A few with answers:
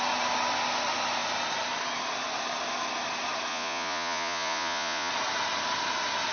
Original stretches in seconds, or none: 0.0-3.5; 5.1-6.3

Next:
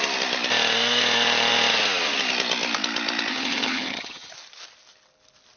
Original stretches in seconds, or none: 0.0-3.3; 4.3-5.6

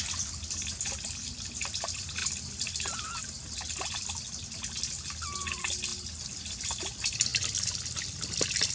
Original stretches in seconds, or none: 0.0-8.7

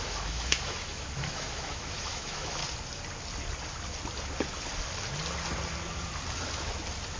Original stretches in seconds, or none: 2.6-7.2

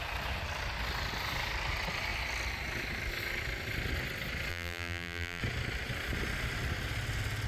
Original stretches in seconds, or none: 0.0-4.5; 5.4-7.5

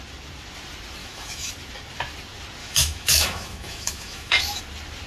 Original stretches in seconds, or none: 0.0-1.0; 1.5-2.6; 4.6-5.1

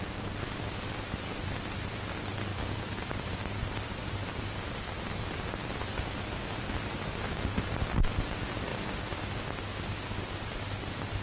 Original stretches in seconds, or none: 0.0-2.5; 4.4-8.7; 9.4-11.2

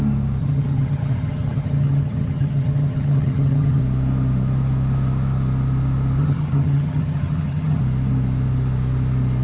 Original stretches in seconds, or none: 0.0-0.4; 3.8-6.2; 7.8-9.4